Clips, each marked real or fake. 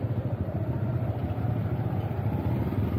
real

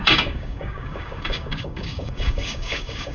fake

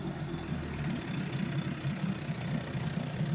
real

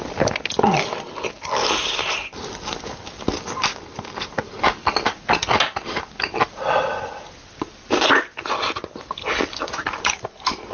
real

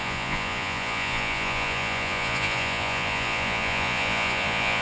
fake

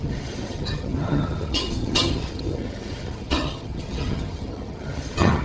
fake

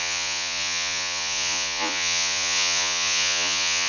fake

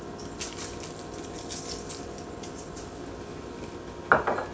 real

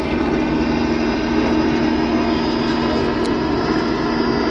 real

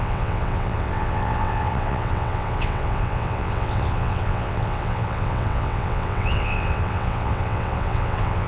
fake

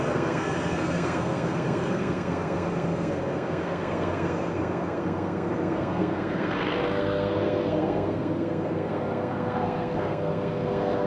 fake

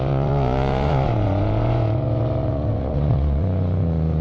fake